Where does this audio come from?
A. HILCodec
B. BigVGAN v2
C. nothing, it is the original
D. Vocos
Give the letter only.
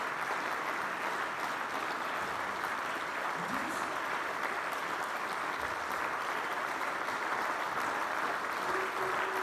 C